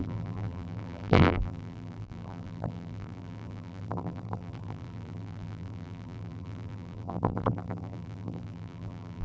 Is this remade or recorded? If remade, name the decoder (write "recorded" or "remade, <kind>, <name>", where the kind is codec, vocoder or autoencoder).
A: remade, vocoder, BigVGAN v2